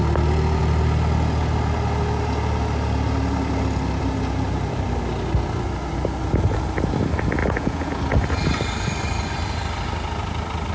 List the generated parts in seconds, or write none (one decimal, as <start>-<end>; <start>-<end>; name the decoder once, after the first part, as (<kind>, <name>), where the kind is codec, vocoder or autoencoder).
7.4-8.0 (vocoder, Vocos)